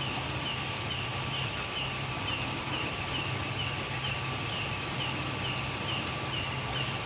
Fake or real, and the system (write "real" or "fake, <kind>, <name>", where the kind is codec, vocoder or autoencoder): fake, vocoder, BigVGAN v2